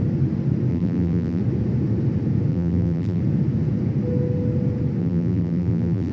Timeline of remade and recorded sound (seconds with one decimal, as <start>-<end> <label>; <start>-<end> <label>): 0.0-0.7 recorded; 0.7-1.4 remade; 1.4-2.5 recorded; 2.5-3.2 remade; 3.2-5.0 recorded; 5.0-6.1 remade